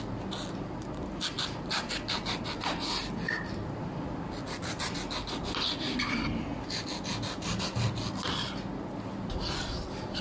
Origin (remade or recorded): recorded